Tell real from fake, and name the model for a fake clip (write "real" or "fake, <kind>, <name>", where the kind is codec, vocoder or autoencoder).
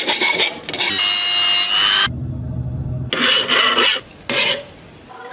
real